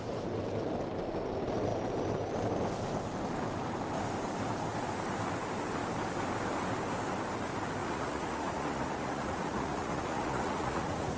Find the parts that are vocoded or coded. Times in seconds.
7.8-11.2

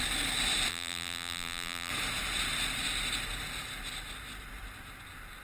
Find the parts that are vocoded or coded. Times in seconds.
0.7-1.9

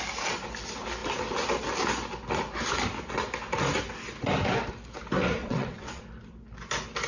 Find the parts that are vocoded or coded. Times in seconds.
5.4-6.0